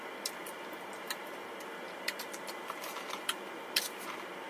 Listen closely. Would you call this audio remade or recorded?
recorded